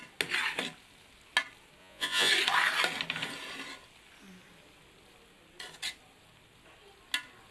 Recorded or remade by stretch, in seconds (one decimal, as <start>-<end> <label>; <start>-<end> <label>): 0.0-1.8 recorded; 1.8-2.3 remade; 2.3-7.5 recorded